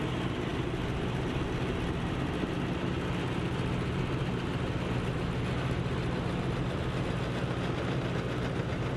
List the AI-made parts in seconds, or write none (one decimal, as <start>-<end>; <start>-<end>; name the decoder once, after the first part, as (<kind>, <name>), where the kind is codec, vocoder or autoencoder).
none